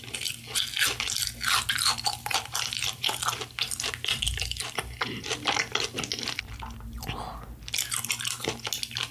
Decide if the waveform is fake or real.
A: real